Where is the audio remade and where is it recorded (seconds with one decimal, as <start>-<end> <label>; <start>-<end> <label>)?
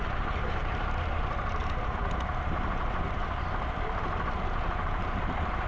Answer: 0.0-5.7 remade